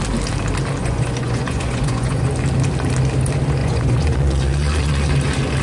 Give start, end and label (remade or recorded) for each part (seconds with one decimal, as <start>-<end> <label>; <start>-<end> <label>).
0.0-0.8 recorded; 0.8-2.3 remade; 2.3-3.6 recorded; 3.6-5.1 remade; 5.1-5.6 recorded